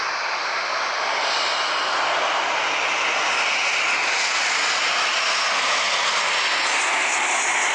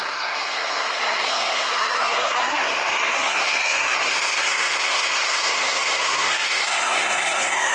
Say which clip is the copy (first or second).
second